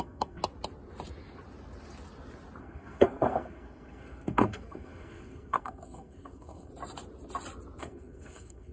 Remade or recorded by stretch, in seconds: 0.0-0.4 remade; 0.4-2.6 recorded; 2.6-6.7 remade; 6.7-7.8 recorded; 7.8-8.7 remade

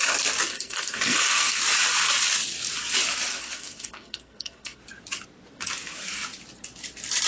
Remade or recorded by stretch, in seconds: 0.0-0.5 recorded; 0.5-1.6 remade; 1.6-3.3 recorded; 3.3-4.8 remade; 4.8-7.3 recorded

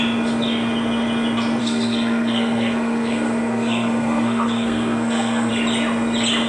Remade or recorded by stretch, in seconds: 0.0-1.6 recorded; 1.6-5.5 remade; 5.5-6.5 recorded

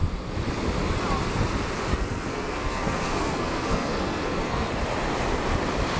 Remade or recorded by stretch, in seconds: 0.0-1.9 recorded; 1.9-4.7 remade; 4.7-6.0 recorded

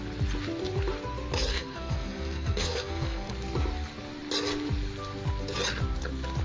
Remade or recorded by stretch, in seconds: 0.0-1.5 recorded; 1.5-3.3 remade; 3.3-6.4 recorded